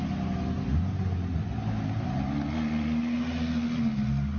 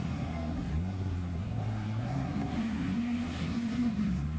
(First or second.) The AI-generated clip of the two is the second